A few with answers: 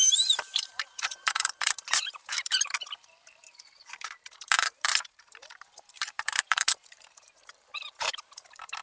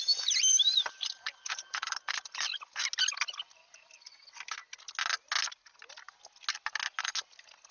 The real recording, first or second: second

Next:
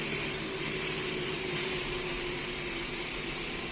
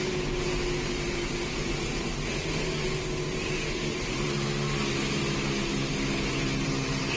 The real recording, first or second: second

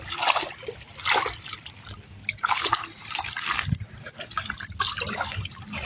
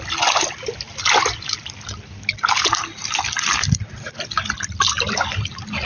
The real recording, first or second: second